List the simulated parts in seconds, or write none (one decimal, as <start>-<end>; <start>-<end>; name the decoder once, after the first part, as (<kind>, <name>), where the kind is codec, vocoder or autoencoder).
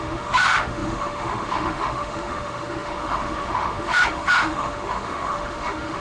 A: 0.0-6.0 (autoencoder, DAC-VAE)